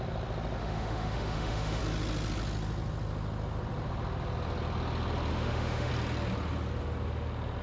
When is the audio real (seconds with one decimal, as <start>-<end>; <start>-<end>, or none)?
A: 0.0-0.6; 1.8-5.3; 5.9-7.6